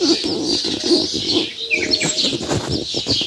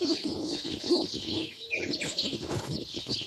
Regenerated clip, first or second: second